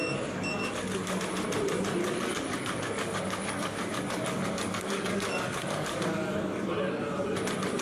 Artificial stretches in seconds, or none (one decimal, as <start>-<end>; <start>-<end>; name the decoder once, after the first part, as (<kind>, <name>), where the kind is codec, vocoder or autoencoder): 0.0-1.2 (codec, DAC); 2.0-6.7